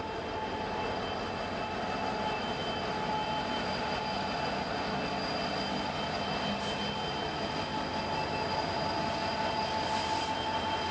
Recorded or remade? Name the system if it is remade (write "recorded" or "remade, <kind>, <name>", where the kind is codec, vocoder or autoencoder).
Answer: recorded